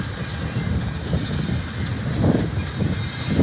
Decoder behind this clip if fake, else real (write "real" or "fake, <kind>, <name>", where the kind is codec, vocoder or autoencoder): real